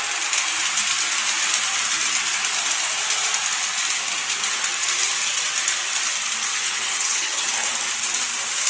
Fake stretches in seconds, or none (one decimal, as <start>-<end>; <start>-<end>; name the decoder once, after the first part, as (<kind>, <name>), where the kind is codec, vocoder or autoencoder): 6.5-7.5 (vocoder, HiFi-GAN)